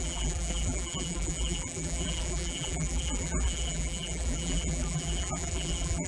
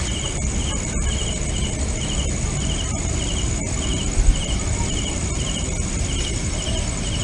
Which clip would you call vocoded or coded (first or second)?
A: first